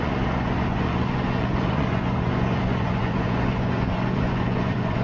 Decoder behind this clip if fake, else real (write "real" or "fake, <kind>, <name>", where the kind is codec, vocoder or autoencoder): fake, vocoder, Vocos